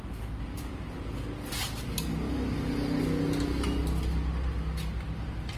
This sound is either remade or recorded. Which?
recorded